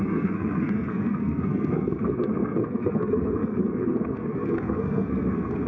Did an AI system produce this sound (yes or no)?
yes